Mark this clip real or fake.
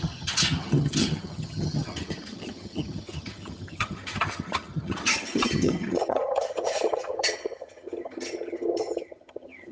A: fake